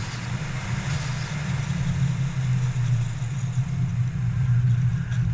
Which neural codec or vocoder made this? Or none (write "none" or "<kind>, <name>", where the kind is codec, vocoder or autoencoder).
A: none